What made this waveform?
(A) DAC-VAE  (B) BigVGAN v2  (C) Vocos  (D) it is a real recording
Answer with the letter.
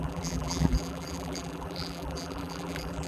B